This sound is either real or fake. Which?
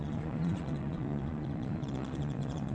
fake